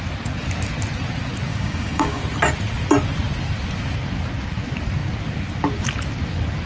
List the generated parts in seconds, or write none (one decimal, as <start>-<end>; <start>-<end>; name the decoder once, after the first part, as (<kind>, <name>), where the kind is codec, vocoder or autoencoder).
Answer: 1.5-2.2 (codec, DAC)